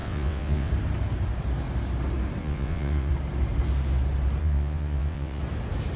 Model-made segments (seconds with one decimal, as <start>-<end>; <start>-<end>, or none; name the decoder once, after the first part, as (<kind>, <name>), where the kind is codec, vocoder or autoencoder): 0.0-0.7 (vocoder, WaveNeXt); 2.4-3.1; 4.4-5.4